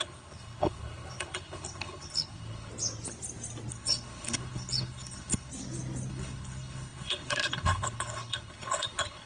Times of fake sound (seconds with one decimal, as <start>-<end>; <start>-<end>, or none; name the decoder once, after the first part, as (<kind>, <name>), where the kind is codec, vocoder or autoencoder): 0.0-2.7 (codec, HILCodec); 3.7-5.5; 6.1-9.3